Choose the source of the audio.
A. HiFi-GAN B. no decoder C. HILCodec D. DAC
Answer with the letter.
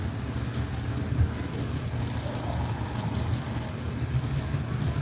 B